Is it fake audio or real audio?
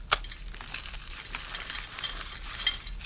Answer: real